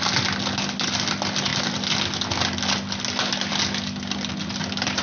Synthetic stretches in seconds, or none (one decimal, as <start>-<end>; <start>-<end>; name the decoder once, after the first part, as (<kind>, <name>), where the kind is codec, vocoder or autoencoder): none